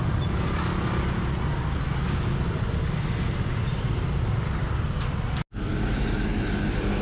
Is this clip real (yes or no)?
yes